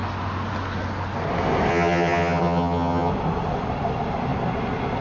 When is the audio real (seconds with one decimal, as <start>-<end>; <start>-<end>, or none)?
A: 0.0-1.7; 3.1-5.0

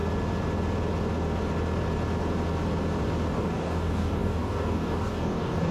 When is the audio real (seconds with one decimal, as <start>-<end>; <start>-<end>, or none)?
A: 0.0-3.3

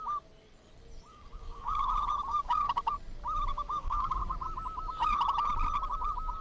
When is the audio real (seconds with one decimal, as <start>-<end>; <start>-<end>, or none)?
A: 0.0-1.1; 1.9-2.3; 2.9-3.5; 4.2-6.4

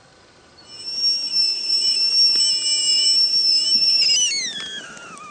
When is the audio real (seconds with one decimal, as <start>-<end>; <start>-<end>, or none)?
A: 0.0-1.3; 2.1-5.3

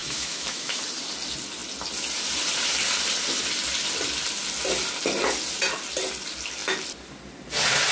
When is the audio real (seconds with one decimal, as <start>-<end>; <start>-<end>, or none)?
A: 0.8-7.9